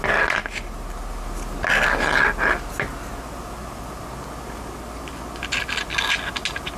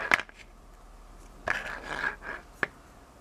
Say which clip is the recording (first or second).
first